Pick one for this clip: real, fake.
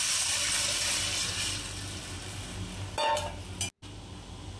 real